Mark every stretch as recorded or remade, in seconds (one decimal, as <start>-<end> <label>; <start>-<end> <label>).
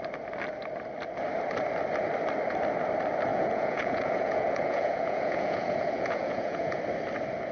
0.0-3.3 recorded; 3.3-6.8 remade; 6.8-7.5 recorded